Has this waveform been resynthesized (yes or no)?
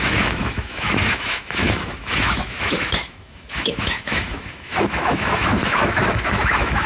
yes